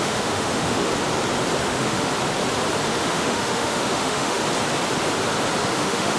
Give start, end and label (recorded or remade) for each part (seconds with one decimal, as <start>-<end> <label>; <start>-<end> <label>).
0.0-0.9 remade; 0.9-1.6 recorded; 1.6-2.1 remade; 2.1-2.9 recorded; 2.9-4.4 remade; 4.4-5.7 recorded; 5.7-6.2 remade